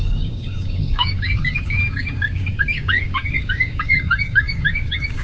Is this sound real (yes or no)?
no